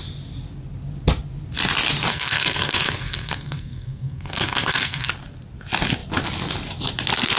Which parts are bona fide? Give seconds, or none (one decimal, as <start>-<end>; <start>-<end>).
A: 0.0-2.1; 5.1-7.4